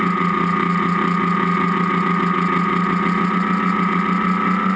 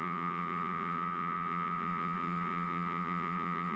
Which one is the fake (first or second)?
second